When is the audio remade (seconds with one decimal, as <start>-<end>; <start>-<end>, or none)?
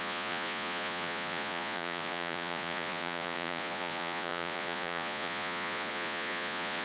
0.0-6.8